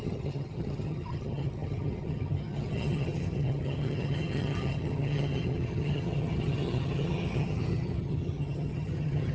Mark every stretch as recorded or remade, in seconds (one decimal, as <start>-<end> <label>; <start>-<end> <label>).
0.0-9.3 remade